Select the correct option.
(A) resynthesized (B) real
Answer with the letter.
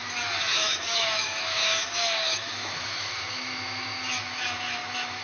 A